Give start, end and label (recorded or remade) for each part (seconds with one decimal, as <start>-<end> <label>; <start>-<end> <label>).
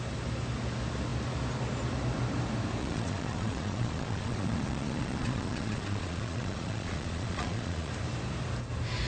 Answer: 0.0-2.8 recorded; 2.8-7.9 remade; 7.9-9.1 recorded